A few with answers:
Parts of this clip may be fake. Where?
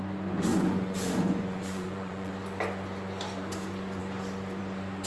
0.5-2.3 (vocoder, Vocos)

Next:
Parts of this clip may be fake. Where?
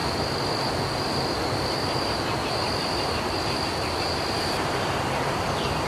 none